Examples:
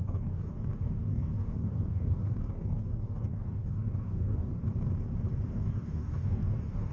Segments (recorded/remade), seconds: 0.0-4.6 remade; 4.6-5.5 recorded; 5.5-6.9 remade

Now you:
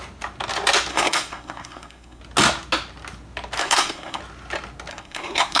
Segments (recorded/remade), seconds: 0.0-0.9 recorded; 0.9-2.2 remade; 2.2-3.6 recorded; 3.6-4.2 remade; 4.2-4.9 recorded; 4.9-5.6 remade

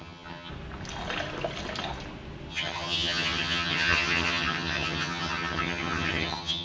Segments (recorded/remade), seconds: 0.0-0.5 remade; 0.5-2.5 recorded; 2.5-6.6 remade

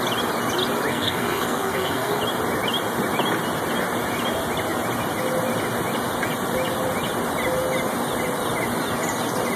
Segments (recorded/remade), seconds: 0.0-0.9 recorded; 0.9-2.2 remade; 2.2-9.6 recorded

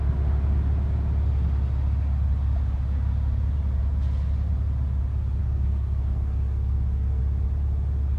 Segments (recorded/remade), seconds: 0.0-5.4 recorded; 5.4-7.2 remade; 7.2-8.2 recorded